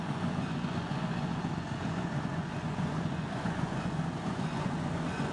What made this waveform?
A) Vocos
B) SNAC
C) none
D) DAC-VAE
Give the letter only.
A